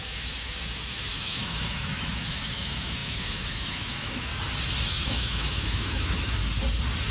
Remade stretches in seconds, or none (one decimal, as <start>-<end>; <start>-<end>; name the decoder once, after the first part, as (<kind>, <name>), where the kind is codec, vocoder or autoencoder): 0.0-4.3 (autoencoder, DAC-VAE); 4.9-6.4